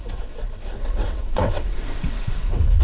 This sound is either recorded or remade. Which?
remade